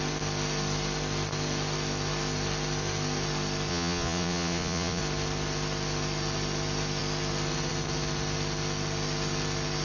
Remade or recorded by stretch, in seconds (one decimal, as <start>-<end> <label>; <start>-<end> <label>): 0.0-3.7 recorded; 3.7-5.0 remade; 5.0-9.8 recorded